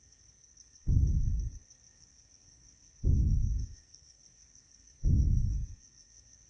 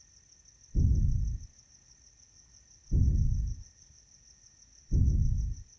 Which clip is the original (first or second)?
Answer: second